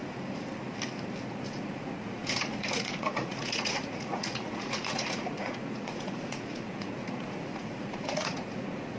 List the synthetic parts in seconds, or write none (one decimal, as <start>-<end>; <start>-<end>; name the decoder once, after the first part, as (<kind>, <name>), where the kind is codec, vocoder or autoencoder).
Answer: 1.3-9.0 (vocoder, Vocos)